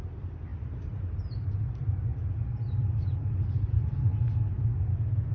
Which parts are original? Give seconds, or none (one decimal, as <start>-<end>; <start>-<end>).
2.1-2.8; 4.1-5.3